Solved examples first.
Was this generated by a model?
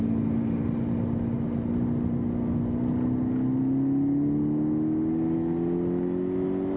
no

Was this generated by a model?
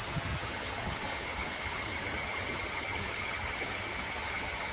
yes